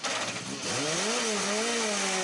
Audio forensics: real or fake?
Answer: real